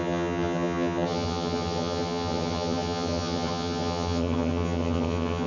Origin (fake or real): fake